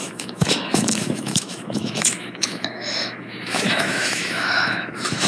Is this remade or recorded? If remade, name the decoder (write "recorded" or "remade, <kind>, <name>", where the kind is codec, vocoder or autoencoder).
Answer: remade, autoencoder, DAC-VAE